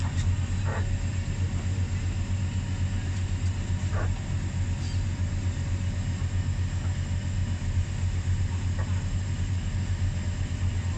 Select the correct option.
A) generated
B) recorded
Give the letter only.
B